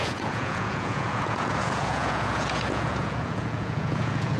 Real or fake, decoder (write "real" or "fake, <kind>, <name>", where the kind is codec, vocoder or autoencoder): fake, vocoder, Vocos